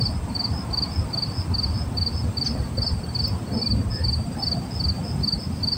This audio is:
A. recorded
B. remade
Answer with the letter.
A